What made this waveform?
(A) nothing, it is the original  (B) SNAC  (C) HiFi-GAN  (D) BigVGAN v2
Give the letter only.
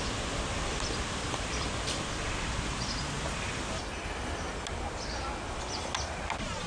A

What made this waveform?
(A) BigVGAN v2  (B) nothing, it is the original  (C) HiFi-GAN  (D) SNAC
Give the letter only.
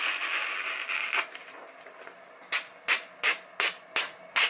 B